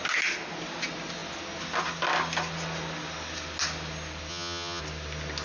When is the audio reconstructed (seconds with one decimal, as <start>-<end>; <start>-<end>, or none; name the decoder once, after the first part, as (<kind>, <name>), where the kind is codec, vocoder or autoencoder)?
4.3-4.8 (vocoder, HiFi-GAN)